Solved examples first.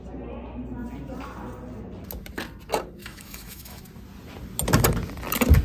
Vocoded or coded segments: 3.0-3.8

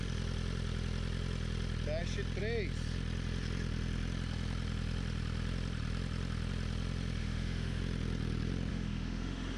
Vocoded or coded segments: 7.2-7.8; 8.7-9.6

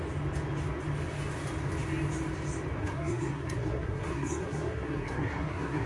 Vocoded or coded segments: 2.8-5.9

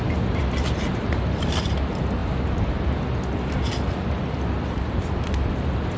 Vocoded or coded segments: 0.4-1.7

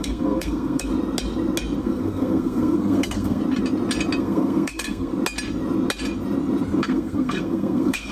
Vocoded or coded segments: 0.0-0.9; 1.8-3.4; 4.2-5.1; 6.8-8.1